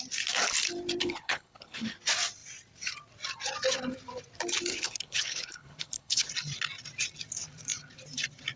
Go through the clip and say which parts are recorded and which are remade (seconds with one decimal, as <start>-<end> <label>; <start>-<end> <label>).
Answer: 0.0-1.0 recorded; 1.0-2.0 remade; 2.0-4.7 recorded; 4.7-6.3 remade; 6.3-8.6 recorded